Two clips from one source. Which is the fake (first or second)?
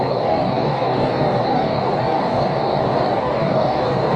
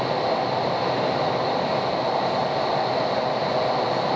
first